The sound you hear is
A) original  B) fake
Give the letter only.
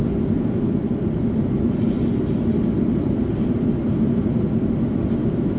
A